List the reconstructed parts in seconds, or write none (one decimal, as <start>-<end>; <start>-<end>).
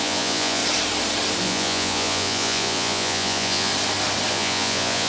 0.0-0.6; 1.4-3.7; 4.3-5.1